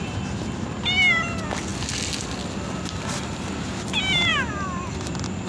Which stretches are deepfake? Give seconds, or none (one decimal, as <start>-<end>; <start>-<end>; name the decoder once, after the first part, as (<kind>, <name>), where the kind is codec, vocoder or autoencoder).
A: none